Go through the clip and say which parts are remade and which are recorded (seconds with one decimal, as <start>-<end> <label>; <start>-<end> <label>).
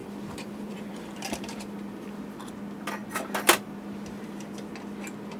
0.0-2.2 remade; 2.2-5.4 recorded